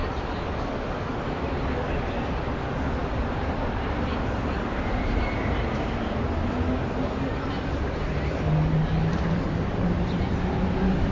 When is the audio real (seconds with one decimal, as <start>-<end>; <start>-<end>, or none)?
0.0-3.0; 3.9-9.0; 10.3-11.1